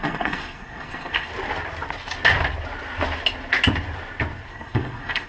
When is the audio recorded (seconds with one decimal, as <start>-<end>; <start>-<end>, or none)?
1.3-4.5